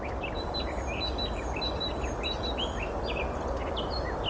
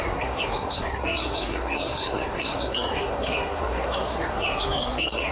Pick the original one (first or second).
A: first